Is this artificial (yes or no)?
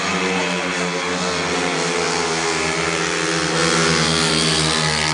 no